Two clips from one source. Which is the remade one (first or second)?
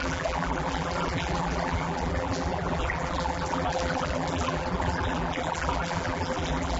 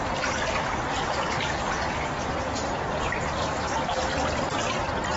first